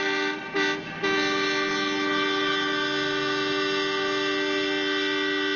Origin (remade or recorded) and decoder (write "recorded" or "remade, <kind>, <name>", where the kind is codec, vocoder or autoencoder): recorded